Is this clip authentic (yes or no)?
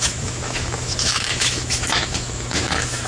no